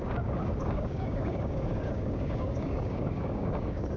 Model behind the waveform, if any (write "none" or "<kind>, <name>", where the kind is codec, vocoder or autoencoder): codec, DAC